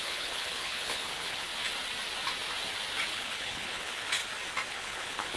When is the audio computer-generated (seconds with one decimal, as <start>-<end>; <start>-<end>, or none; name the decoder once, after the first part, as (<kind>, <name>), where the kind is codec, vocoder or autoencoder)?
0.0-1.5 (codec, HILCodec); 3.1-4.2; 4.7-5.4